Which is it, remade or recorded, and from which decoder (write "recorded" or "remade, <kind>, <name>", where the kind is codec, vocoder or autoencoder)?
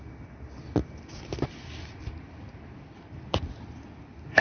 recorded